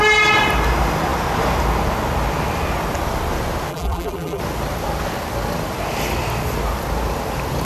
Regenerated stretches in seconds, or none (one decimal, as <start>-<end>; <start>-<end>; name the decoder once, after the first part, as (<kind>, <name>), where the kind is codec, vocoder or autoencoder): 3.7-4.4 (vocoder, BigVGAN v2)